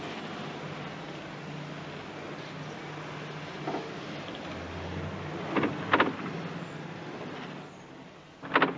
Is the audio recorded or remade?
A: recorded